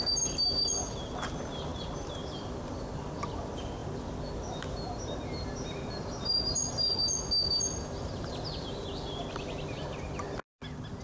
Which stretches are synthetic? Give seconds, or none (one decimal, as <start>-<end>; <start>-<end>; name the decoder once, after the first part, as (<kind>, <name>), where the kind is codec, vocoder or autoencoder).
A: 1.7-2.7 (vocoder, BigVGAN v2); 3.8-4.6